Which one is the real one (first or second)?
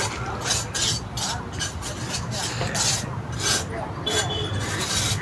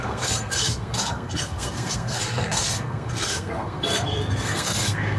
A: first